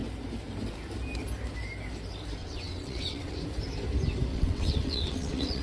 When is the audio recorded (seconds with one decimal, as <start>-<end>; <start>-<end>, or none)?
0.0-2.4; 3.4-4.3

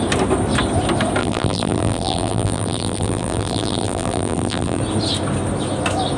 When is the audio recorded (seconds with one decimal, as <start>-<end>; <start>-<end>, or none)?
0.0-1.2; 4.8-6.2

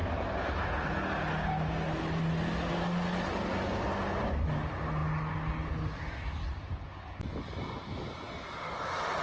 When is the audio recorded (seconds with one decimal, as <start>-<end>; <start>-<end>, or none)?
0.0-9.2